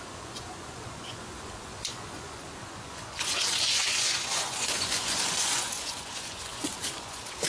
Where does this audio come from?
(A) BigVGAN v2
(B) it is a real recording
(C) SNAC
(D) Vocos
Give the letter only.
D